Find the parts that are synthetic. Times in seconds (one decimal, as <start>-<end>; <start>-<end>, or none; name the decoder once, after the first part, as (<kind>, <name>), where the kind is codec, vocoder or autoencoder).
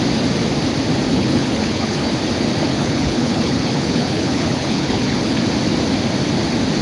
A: 1.1-2.1 (codec, HILCodec); 2.7-5.4